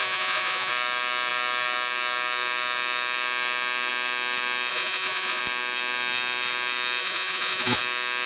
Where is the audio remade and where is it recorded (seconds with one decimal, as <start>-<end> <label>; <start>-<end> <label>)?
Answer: 0.0-0.7 remade; 0.7-4.7 recorded; 4.7-5.4 remade; 5.4-7.0 recorded; 7.0-7.8 remade; 7.8-8.3 recorded

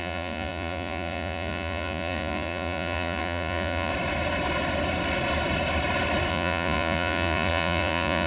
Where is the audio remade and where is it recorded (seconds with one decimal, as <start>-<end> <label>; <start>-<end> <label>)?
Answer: 0.0-3.9 remade; 3.9-6.3 recorded; 6.3-8.3 remade

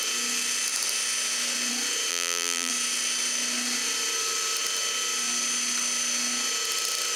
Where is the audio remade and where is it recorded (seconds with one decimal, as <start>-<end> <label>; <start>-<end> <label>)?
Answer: 0.0-2.1 recorded; 2.1-2.7 remade; 2.7-7.2 recorded

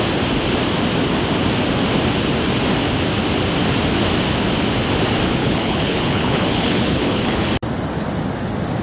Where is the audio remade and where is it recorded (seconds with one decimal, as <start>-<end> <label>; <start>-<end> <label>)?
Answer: 0.0-5.4 recorded; 5.4-7.5 remade; 7.5-8.8 recorded

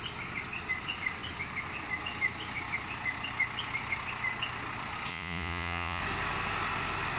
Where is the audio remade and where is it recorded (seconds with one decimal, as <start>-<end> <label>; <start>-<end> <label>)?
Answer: 0.0-5.1 recorded; 5.1-6.0 remade; 6.0-7.2 recorded

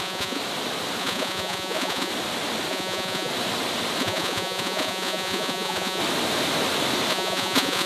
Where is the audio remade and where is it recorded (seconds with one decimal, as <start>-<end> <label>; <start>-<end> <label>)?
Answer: 0.0-0.4 remade; 0.4-1.0 recorded; 1.0-2.1 remade; 2.1-2.7 recorded; 2.7-3.3 remade; 3.3-4.0 recorded; 4.0-6.0 remade; 6.0-7.1 recorded; 7.1-7.9 remade